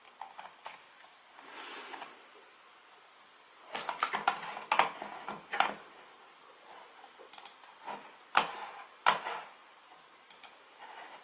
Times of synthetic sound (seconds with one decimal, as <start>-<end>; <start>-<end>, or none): none